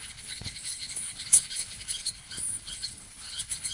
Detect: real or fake fake